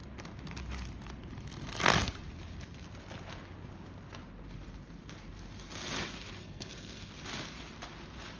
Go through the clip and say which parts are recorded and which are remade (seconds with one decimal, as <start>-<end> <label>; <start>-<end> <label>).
0.0-6.4 recorded; 6.4-7.1 remade; 7.1-8.4 recorded